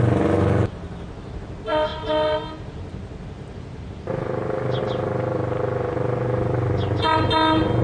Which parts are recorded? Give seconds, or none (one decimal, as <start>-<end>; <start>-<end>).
0.0-7.8